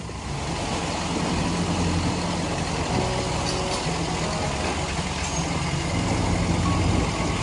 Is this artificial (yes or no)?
no